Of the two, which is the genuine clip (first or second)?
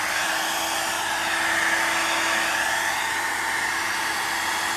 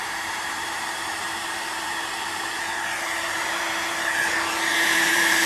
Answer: first